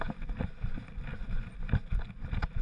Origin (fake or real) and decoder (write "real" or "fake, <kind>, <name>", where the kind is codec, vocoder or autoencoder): real